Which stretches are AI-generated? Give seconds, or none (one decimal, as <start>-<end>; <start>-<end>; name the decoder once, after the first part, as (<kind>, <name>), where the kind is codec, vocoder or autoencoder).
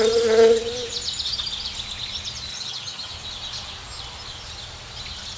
2.5-3.1 (vocoder, HiFi-GAN)